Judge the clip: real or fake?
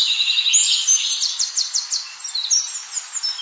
real